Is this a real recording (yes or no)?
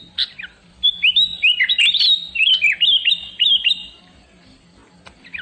yes